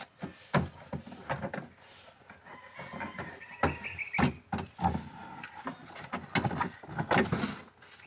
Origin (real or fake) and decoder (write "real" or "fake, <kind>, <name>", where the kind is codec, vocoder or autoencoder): real